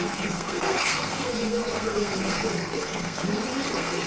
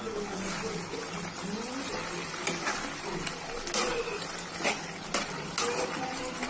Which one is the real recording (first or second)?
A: second